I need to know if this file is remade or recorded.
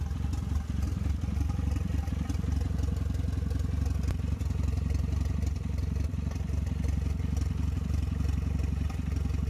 recorded